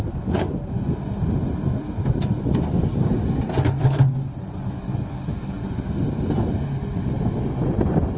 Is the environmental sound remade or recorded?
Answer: recorded